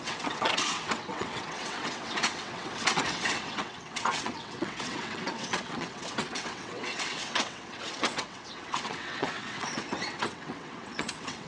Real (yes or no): no